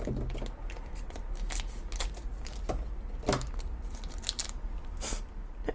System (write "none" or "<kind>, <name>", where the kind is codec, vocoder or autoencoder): none